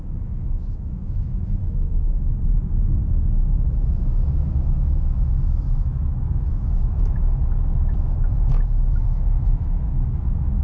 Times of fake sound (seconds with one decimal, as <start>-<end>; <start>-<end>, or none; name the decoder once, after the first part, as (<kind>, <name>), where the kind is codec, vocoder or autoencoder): 0.0-2.3 (autoencoder, DAC-VAE); 3.5-7.4; 8.9-10.6